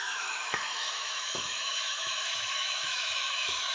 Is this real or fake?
fake